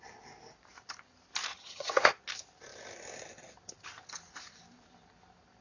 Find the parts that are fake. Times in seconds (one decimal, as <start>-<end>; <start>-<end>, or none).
1.5-2.1